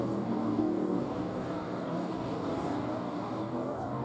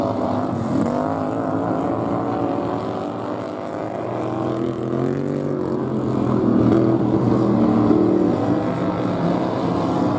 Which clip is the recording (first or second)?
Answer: second